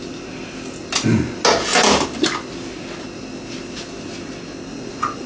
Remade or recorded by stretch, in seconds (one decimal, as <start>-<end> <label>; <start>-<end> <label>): 0.0-4.7 recorded; 4.7-5.3 remade